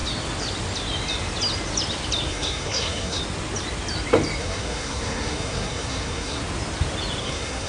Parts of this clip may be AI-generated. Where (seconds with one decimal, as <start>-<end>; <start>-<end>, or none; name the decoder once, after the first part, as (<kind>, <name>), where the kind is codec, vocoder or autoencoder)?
2.3-3.2 (codec, SNAC); 4.4-6.4; 7.2-7.7